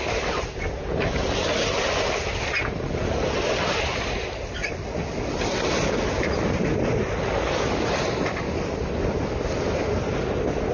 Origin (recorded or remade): recorded